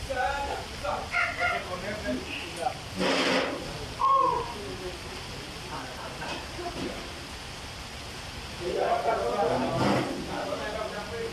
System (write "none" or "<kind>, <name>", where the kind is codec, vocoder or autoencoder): none